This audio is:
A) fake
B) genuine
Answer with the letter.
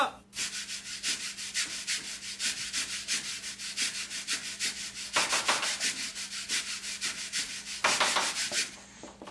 B